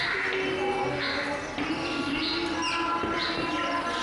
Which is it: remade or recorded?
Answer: recorded